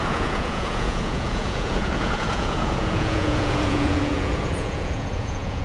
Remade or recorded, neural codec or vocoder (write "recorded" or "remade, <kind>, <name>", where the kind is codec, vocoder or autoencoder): remade, vocoder, Vocos